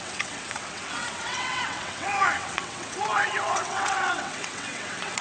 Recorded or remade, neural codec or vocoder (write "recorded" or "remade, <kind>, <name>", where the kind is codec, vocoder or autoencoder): remade, vocoder, WaveNeXt